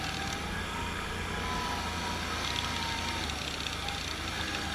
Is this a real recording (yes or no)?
yes